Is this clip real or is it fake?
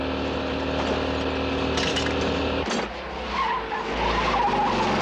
real